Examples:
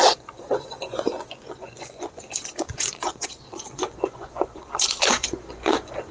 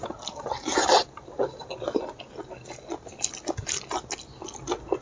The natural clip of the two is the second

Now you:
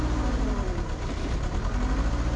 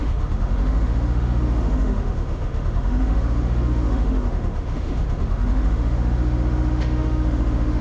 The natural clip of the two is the first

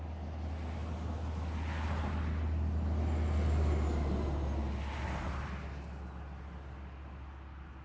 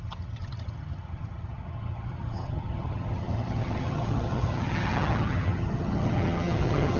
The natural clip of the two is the first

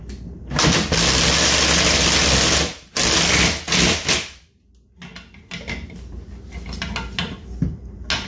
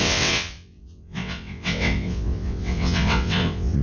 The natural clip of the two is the first